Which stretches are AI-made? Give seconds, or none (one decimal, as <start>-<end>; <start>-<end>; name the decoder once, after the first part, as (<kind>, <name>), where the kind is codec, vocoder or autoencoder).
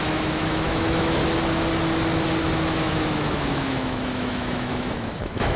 0.0-1.2 (autoencoder, DAC-VAE); 2.4-5.6